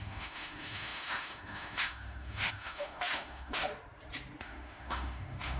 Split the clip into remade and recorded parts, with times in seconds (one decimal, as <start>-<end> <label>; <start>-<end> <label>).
0.0-3.7 remade; 3.7-4.4 recorded; 4.4-5.6 remade